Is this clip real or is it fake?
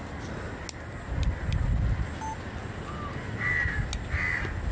real